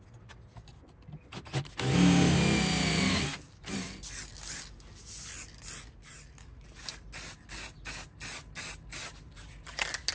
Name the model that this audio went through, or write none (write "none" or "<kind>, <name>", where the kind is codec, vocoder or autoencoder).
none